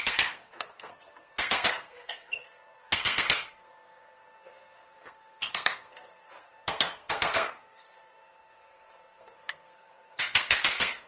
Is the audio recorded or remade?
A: remade